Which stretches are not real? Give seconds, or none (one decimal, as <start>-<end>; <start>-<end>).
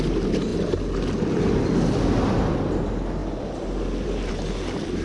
none